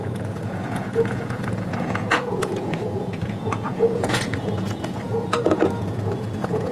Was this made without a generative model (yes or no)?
no